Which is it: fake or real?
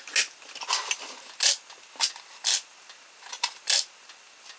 real